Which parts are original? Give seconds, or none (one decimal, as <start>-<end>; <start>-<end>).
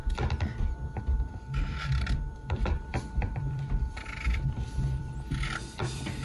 0.0-1.0